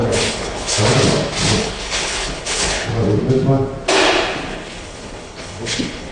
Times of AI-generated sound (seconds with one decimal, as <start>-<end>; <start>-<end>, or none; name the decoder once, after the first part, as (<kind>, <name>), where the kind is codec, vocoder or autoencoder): 0.0-0.8 (codec, HILCodec); 1.6-2.9; 4.5-6.1